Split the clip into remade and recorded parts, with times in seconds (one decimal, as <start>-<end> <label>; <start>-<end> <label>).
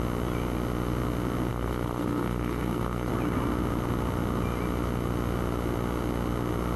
0.0-1.5 recorded; 1.5-3.1 remade; 3.1-6.8 recorded